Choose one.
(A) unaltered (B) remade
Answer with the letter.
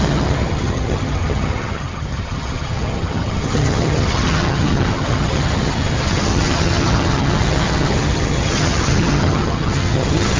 B